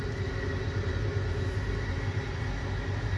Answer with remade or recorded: recorded